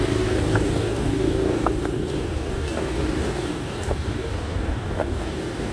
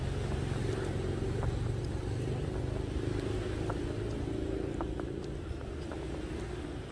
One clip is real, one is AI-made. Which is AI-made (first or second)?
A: first